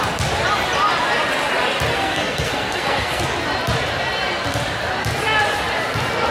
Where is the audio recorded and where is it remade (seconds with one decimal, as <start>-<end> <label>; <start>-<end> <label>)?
0.0-1.9 recorded; 1.9-3.2 remade; 3.2-6.3 recorded